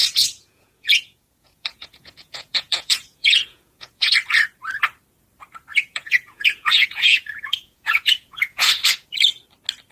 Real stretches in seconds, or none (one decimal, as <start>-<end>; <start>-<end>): 4.1-5.7; 8.7-9.9

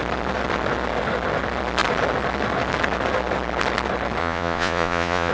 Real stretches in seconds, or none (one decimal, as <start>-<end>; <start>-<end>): 0.0-4.2

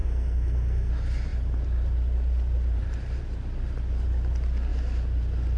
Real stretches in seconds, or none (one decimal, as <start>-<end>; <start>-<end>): 0.9-5.6

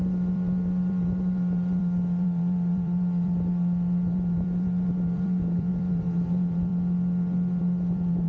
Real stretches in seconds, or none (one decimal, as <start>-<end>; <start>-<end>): 6.7-7.6